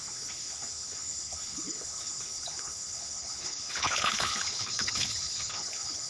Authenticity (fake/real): fake